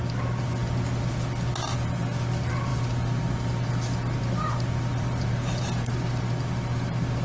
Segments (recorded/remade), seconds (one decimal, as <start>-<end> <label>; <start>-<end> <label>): 0.0-2.7 recorded; 2.7-3.2 remade; 3.2-4.9 recorded; 4.9-5.7 remade; 5.7-7.2 recorded